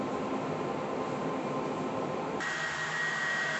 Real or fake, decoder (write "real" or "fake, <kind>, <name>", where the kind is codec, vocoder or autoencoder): real